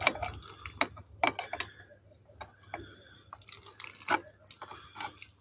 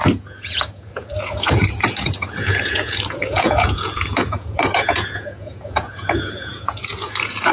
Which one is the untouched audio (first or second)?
first